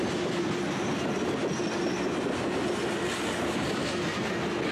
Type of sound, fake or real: real